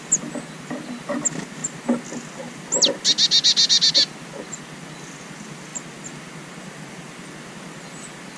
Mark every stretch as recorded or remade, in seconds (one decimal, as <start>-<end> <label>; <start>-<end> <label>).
0.0-8.4 recorded